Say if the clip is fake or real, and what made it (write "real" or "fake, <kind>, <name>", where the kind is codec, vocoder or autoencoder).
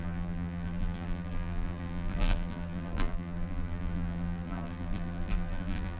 fake, vocoder, BigVGAN v2